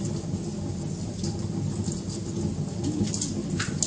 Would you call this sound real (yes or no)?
yes